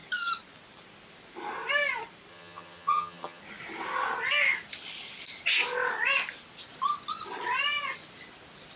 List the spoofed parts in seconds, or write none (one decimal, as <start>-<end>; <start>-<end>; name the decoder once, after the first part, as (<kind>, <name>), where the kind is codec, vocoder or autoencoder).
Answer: 2.3-3.4 (vocoder, HiFi-GAN)